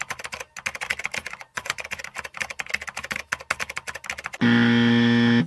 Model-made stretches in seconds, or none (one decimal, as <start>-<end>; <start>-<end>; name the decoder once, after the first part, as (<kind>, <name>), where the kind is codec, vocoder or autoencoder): 1.2-2.0 (vocoder, Vocos)